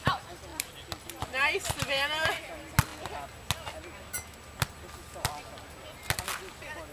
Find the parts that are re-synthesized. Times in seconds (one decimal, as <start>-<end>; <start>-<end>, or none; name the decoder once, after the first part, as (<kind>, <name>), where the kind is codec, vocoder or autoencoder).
none